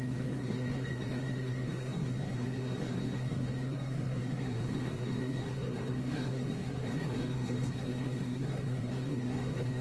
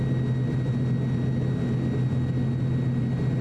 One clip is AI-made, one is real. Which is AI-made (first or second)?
first